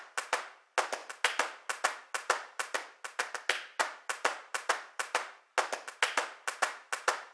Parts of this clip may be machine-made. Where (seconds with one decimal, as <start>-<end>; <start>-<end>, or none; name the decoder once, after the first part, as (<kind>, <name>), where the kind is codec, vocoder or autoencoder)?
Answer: none